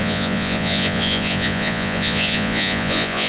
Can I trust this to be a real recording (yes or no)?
no